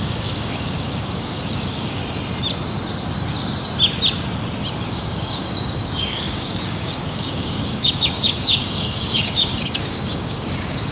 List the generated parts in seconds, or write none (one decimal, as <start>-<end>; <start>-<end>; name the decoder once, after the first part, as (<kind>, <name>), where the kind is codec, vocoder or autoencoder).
0.0-2.0 (codec, DAC); 4.8-10.9